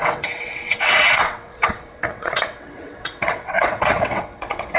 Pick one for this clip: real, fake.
fake